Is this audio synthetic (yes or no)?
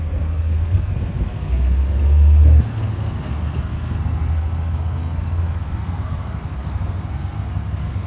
yes